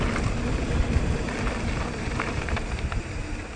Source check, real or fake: real